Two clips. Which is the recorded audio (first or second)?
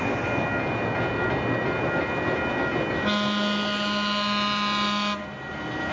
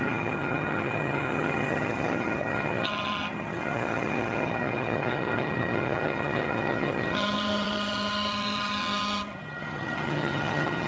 first